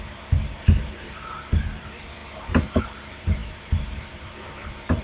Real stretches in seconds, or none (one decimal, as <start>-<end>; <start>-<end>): none